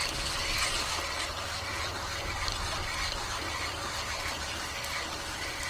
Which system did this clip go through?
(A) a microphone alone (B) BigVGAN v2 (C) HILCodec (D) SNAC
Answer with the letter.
A